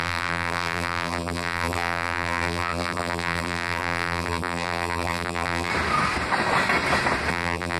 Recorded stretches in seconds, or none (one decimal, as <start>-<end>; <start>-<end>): 5.7-7.3